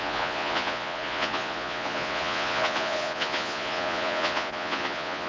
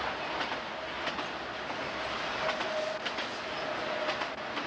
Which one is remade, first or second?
first